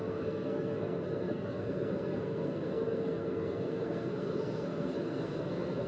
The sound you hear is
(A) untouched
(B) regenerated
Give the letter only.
B